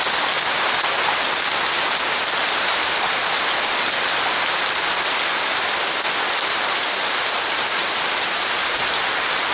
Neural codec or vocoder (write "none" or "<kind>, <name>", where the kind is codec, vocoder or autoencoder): none